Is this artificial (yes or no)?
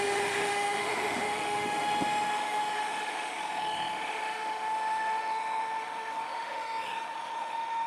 yes